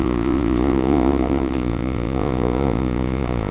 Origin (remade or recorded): remade